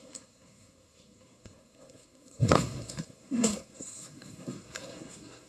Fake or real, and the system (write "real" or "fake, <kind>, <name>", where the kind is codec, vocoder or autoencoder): fake, codec, SNAC